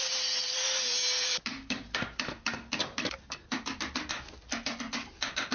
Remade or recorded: remade